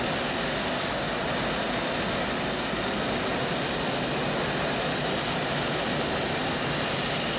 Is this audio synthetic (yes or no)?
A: no